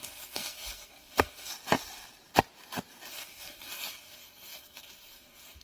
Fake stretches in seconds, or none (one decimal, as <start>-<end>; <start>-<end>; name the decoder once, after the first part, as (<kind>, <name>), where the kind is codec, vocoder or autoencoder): 0.0-1.5 (codec, SNAC); 3.1-5.6